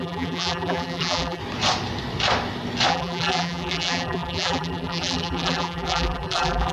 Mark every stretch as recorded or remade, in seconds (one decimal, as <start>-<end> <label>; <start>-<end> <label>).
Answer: 0.0-1.4 remade; 1.4-2.9 recorded; 2.9-6.7 remade